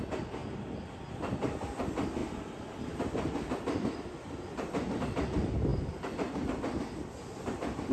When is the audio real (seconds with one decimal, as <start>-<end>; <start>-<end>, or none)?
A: 0.0-7.9